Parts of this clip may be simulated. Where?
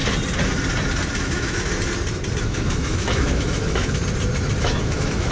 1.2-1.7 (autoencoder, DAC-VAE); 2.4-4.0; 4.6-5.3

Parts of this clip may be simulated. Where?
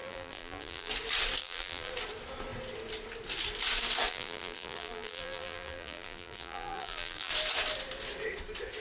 0.0-0.9 (vocoder, BigVGAN v2); 1.4-1.9; 4.1-7.3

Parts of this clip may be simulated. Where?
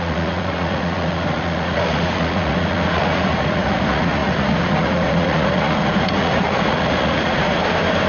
0.0-7.6 (vocoder, Vocos)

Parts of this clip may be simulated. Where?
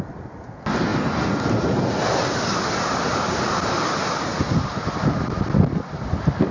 0.0-0.9 (vocoder, BigVGAN v2); 4.8-6.5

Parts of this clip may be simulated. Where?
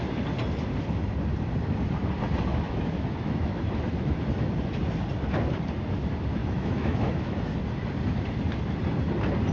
2.5-3.8 (autoencoder, DAC-VAE); 6.4-7.4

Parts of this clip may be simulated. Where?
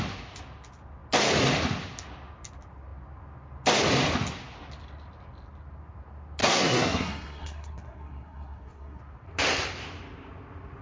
6.4-9.0 (codec, SNAC)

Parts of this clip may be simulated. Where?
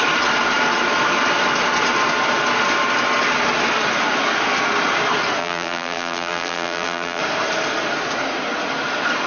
5.4-7.2 (vocoder, BigVGAN v2)